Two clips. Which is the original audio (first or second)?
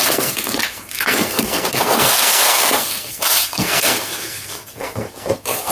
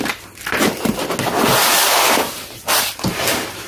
second